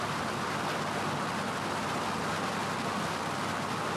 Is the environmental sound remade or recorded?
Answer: recorded